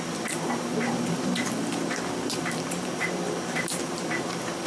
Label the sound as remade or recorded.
remade